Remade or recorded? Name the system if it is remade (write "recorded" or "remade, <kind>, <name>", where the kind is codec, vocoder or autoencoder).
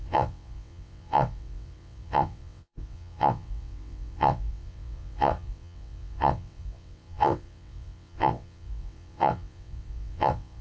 remade, vocoder, WaveNeXt